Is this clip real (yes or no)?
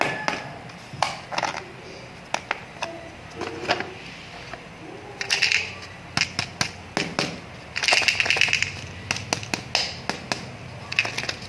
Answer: yes